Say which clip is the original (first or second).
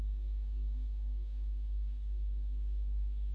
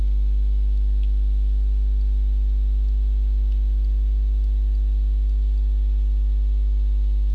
second